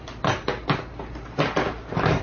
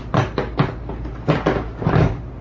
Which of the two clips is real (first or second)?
second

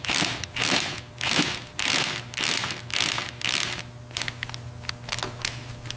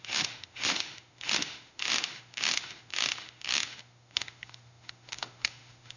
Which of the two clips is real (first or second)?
first